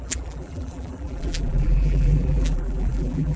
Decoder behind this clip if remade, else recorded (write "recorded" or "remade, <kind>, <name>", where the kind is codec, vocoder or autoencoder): remade, vocoder, BigVGAN v2